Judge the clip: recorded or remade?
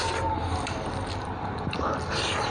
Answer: recorded